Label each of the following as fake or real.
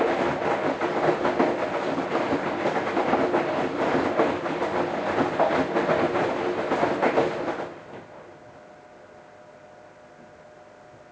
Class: real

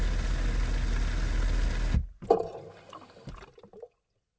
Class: real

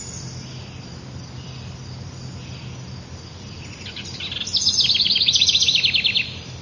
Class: real